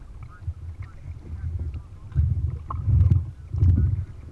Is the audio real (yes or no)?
yes